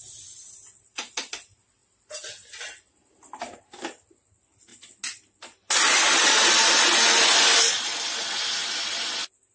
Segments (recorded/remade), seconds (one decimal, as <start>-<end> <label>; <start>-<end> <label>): 0.0-9.5 recorded

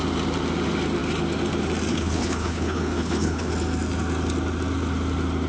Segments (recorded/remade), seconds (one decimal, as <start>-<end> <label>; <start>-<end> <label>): 0.0-1.9 recorded; 1.9-3.5 remade; 3.5-5.5 recorded